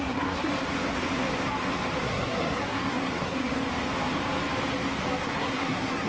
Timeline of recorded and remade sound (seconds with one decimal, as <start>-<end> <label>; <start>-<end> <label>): 0.0-0.5 remade; 0.5-2.0 recorded; 2.0-3.6 remade; 3.6-5.2 recorded; 5.2-6.1 remade